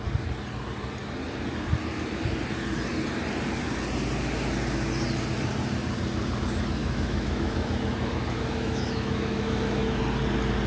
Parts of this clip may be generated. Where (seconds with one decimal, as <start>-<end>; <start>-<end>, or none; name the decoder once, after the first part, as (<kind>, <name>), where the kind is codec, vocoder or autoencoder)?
6.8-10.0 (autoencoder, DAC-VAE)